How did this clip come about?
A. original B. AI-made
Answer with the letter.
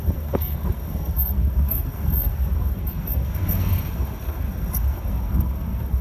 B